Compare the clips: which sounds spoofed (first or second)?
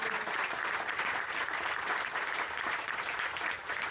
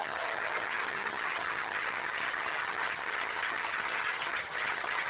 second